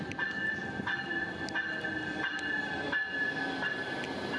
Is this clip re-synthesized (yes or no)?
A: no